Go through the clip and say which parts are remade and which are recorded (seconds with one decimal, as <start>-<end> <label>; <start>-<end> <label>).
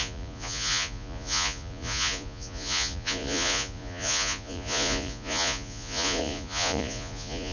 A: 0.0-7.5 remade